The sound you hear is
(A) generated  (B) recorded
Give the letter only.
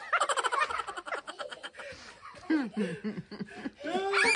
B